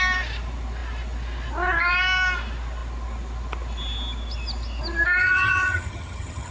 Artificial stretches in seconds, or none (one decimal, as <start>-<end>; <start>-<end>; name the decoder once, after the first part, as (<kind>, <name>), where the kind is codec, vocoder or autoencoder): 5.2-6.5 (vocoder, HiFi-GAN)